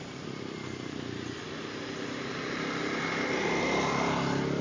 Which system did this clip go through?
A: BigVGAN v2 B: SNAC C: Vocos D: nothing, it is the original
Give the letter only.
D